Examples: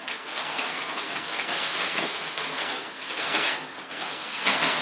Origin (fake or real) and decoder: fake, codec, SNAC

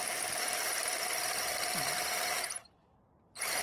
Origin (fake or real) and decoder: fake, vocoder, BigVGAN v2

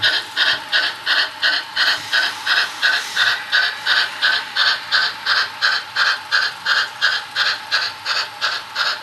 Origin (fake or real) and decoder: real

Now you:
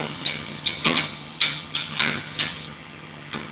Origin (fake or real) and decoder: fake, vocoder, HiFi-GAN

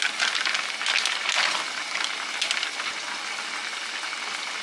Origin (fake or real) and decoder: real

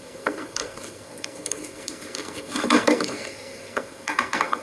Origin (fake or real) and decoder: fake, codec, SNAC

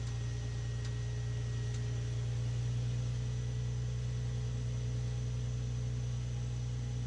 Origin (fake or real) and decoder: real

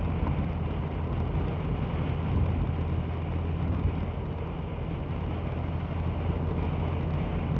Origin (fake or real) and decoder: real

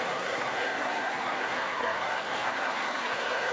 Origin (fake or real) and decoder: fake, codec, SNAC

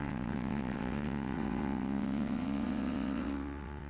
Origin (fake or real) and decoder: fake, vocoder, WaveNeXt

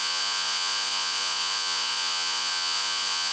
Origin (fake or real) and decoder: fake, vocoder, Vocos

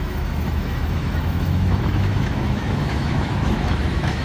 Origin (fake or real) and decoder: fake, autoencoder, DAC-VAE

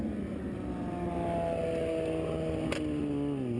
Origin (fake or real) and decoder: real